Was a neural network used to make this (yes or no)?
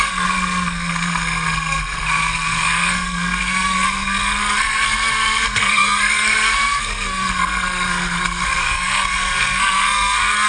yes